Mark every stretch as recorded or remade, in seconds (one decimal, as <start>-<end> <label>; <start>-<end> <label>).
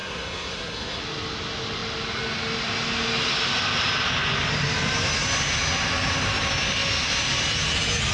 0.0-1.0 remade; 1.0-8.1 recorded